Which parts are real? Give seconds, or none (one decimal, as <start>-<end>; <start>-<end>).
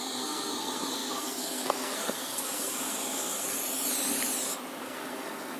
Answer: 3.6-4.8